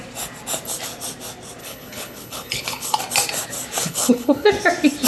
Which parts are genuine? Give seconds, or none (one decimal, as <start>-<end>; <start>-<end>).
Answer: 0.0-1.6; 3.0-3.8; 4.5-5.1